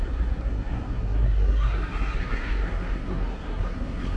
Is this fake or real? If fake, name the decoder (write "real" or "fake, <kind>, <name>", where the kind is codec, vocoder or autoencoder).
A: fake, codec, SNAC